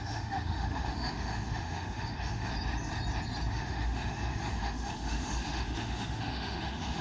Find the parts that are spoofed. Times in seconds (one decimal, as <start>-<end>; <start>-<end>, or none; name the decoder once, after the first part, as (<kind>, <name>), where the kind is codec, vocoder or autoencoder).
0.0-2.5 (autoencoder, DAC-VAE); 3.5-7.0